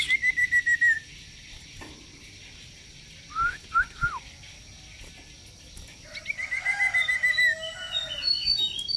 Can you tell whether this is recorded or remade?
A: recorded